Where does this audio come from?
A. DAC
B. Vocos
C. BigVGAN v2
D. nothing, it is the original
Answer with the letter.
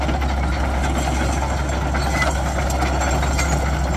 D